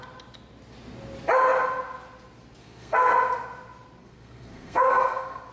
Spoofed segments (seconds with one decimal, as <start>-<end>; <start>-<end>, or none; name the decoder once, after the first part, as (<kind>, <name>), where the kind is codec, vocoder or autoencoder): 2.6-3.1 (codec, SNAC); 4.0-5.5